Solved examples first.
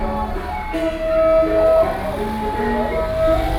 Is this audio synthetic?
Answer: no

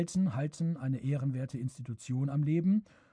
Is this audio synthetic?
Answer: no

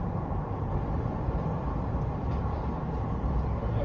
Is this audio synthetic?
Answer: no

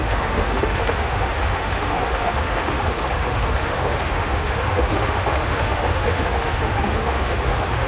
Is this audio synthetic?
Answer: yes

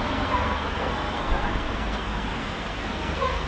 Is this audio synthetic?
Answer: yes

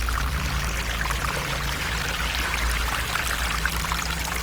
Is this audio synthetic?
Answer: no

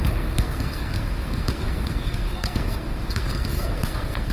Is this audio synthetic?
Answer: yes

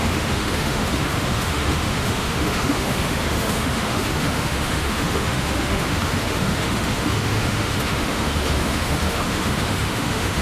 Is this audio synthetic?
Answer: yes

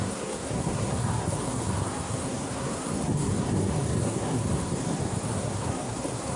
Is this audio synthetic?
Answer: yes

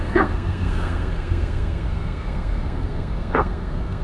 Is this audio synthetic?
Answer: yes